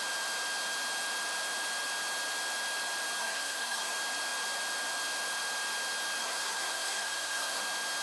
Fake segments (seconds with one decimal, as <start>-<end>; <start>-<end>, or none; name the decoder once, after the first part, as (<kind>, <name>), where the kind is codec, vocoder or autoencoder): 3.2-3.9 (codec, SNAC); 6.2-7.6